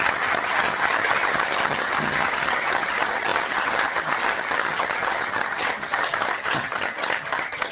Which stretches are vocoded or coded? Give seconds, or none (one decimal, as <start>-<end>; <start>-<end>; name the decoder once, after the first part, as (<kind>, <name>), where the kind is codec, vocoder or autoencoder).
0.0-7.7 (vocoder, HiFi-GAN)